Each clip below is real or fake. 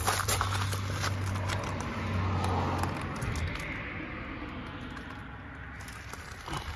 real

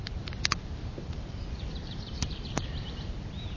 fake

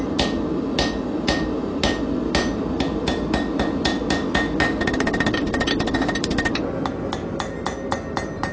real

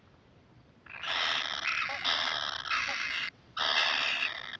real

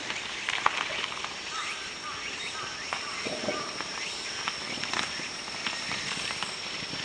real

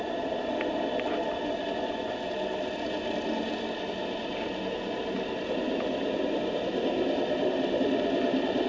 real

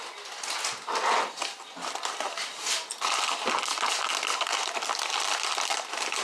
real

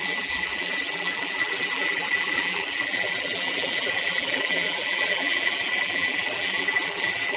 fake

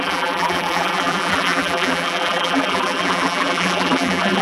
fake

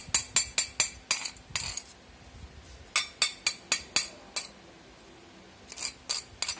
real